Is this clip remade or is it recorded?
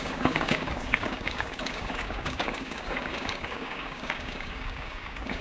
remade